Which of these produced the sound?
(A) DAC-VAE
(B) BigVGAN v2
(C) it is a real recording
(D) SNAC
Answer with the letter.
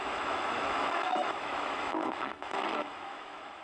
A